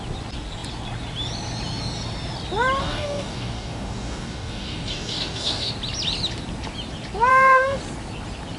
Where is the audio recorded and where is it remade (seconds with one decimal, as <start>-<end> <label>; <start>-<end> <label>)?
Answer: 0.0-2.8 recorded; 2.8-5.7 remade; 5.7-7.3 recorded; 7.3-7.8 remade; 7.8-8.6 recorded